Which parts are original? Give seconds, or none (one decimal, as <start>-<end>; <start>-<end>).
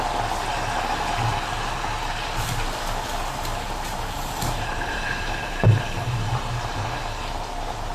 0.0-3.5; 7.0-7.9